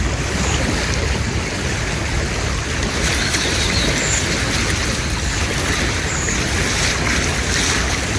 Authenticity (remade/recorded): recorded